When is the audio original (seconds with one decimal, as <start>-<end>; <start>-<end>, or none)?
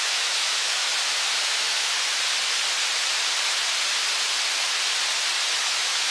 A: 0.9-1.4; 1.9-5.6